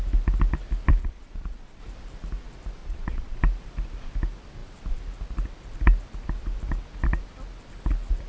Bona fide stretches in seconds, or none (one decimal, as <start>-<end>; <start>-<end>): 0.0-1.0; 1.8-2.8; 3.4-8.3

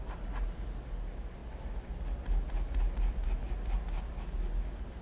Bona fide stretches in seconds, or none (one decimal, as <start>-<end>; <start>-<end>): 0.0-5.0

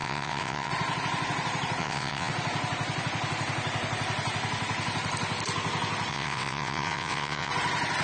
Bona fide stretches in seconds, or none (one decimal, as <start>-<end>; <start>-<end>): 0.7-1.8; 2.3-6.1; 7.5-8.0

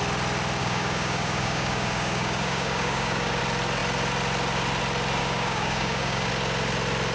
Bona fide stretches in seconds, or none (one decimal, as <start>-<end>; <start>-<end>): 0.0-0.6; 3.4-5.2; 6.3-7.1

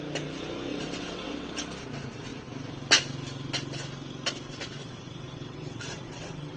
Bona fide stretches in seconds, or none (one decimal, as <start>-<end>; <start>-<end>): 0.0-0.7; 1.5-4.8

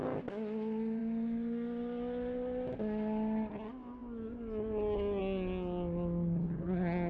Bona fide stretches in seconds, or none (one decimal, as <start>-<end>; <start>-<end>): 0.0-7.1

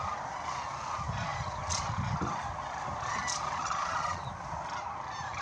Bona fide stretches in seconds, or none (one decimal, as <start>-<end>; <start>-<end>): 0.0-3.6; 4.2-5.4

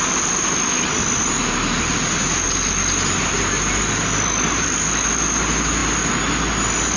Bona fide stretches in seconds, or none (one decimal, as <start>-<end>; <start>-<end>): 0.0-7.0